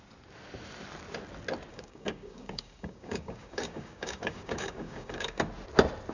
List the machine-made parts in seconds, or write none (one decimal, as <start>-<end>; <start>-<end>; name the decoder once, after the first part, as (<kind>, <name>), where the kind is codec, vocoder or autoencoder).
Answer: 1.7-5.4 (codec, DAC)